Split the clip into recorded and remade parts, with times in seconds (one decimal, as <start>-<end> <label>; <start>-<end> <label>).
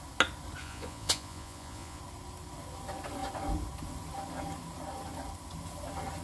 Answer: 0.0-0.6 recorded; 0.6-2.0 remade; 2.0-6.2 recorded